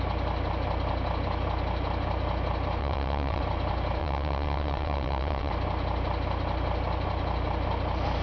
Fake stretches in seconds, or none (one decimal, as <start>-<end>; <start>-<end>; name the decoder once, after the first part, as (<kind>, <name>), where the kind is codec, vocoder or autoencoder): 2.8-3.4 (vocoder, WaveNeXt); 4.0-5.5